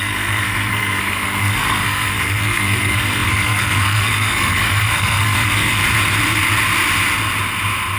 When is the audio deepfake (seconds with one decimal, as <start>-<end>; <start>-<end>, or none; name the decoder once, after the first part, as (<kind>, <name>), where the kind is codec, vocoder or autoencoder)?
0.0-5.8 (codec, SNAC)